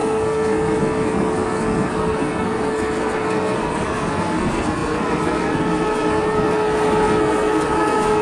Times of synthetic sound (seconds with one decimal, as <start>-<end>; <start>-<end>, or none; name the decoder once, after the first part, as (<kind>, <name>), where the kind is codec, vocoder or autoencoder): 0.0-8.2 (codec, SNAC)